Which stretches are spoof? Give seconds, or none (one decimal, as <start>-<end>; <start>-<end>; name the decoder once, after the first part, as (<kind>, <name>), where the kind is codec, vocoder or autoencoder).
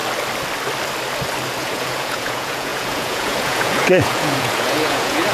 1.6-5.3 (vocoder, Vocos)